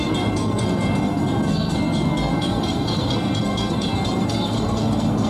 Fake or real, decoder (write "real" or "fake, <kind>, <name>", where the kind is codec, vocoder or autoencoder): fake, codec, SNAC